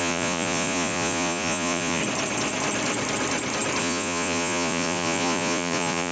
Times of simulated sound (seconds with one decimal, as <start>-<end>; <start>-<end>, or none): 0.0-2.0; 3.8-6.1